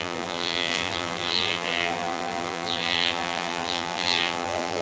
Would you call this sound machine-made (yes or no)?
yes